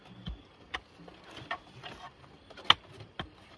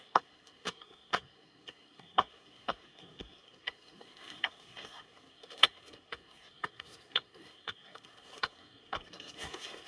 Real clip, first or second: first